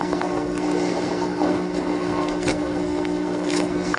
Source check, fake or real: fake